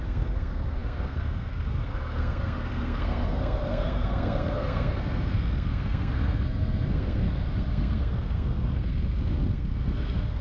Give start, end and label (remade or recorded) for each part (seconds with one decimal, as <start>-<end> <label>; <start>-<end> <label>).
0.0-10.4 remade